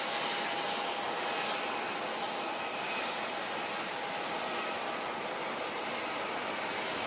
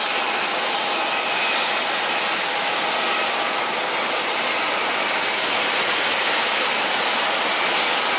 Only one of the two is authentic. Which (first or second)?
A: first